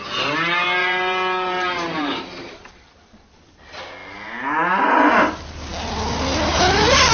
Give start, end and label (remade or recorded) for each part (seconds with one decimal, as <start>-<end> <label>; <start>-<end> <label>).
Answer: 0.0-0.8 recorded; 0.8-3.4 remade; 3.4-7.1 recorded